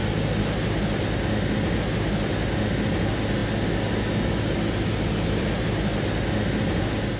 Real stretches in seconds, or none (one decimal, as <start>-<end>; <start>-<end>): 0.0-7.2